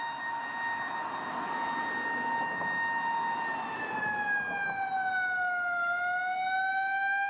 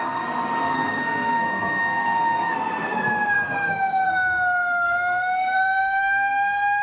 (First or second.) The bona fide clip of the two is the first